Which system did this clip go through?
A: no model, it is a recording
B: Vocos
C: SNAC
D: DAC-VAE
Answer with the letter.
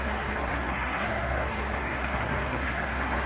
C